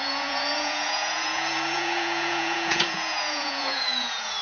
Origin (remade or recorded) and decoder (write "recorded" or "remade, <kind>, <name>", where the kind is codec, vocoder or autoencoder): remade, vocoder, Vocos